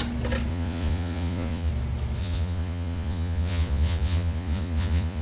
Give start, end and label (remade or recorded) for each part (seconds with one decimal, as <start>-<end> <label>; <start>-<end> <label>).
0.0-0.5 recorded; 0.5-1.7 remade; 1.7-2.2 recorded; 2.2-5.2 remade